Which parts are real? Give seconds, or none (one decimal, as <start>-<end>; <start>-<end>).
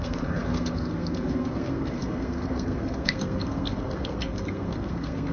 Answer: none